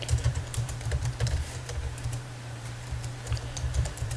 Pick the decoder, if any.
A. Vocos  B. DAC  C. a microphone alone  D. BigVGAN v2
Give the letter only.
D